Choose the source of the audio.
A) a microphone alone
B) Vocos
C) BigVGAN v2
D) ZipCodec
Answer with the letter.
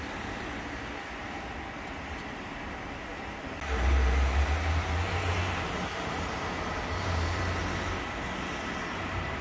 A